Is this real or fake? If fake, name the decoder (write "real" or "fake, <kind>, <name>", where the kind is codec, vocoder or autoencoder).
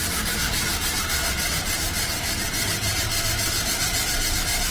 real